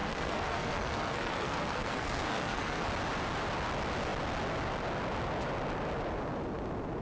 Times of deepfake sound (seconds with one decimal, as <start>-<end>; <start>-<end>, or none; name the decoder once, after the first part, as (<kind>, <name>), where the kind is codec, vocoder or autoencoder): 0.0-2.9 (codec, SNAC)